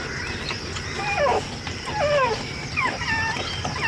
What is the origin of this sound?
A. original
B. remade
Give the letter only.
A